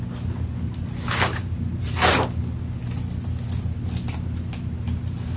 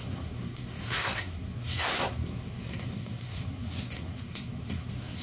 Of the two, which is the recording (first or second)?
first